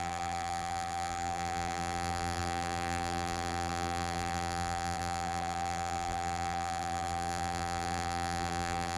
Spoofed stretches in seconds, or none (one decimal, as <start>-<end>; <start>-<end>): 0.0-9.0